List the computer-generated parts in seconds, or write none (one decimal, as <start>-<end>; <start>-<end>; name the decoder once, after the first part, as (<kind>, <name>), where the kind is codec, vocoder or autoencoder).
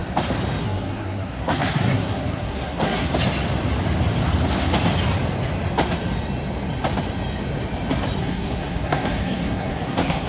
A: 0.6-3.1 (codec, SNAC); 8.2-10.3